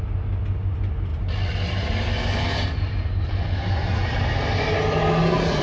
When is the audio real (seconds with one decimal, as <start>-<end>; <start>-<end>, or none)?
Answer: 0.0-5.6